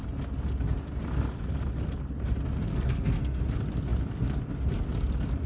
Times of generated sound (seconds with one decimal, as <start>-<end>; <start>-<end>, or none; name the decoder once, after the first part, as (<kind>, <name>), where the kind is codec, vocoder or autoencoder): 2.7-3.4 (codec, SNAC)

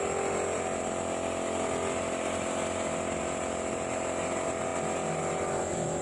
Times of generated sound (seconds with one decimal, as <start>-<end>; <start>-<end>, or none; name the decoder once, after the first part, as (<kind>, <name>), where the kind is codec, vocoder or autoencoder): none